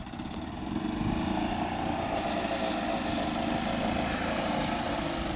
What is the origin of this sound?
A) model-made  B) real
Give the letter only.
B